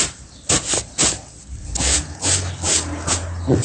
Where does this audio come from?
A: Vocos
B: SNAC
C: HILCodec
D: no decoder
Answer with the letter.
D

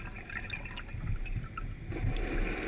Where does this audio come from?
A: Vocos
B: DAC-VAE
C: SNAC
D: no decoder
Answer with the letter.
D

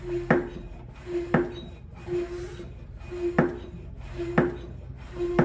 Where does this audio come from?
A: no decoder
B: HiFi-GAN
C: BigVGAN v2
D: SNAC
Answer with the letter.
A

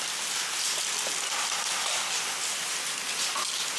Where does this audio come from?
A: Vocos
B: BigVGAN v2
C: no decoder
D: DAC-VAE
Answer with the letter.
C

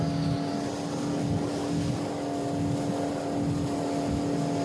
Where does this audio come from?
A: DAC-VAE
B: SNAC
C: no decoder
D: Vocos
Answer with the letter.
C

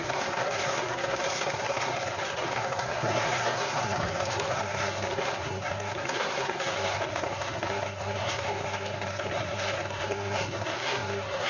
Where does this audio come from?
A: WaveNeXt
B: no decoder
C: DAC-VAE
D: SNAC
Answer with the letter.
D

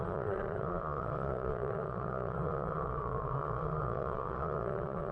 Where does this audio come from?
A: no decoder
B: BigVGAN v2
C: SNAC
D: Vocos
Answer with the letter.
D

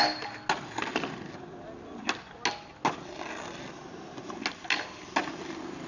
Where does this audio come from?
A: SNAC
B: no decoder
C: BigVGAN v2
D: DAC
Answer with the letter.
B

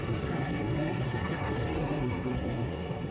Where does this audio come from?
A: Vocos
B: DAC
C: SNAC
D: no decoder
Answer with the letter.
C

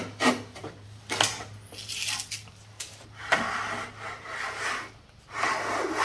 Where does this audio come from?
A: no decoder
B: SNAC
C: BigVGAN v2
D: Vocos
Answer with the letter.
A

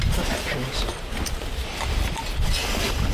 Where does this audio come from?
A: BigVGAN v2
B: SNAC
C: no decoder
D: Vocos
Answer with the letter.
C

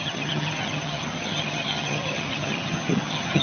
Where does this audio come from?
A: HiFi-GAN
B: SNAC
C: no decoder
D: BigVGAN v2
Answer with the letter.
A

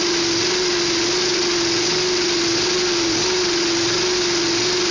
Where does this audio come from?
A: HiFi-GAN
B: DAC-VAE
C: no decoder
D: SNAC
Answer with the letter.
C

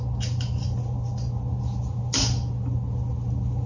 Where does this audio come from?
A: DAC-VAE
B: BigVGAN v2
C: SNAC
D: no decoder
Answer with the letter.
D